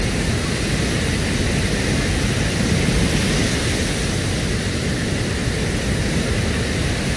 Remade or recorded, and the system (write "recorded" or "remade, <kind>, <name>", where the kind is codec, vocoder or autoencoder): recorded